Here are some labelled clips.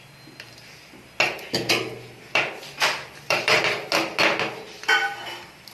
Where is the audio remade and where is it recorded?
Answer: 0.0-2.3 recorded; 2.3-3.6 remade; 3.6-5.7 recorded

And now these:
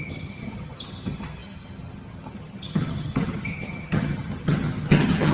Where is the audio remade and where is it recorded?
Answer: 0.0-5.3 remade

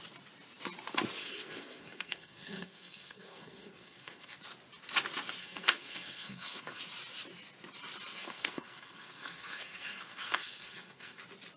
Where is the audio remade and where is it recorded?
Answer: 0.0-1.2 recorded; 1.2-4.4 remade; 4.4-5.4 recorded; 5.4-6.8 remade; 6.8-8.1 recorded; 8.1-11.2 remade; 11.2-11.6 recorded